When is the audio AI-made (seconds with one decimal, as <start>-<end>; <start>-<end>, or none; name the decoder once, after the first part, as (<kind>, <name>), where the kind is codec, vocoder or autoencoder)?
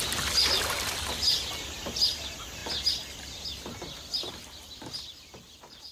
none